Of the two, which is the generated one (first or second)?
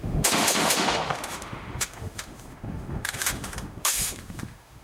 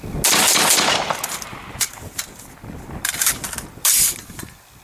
first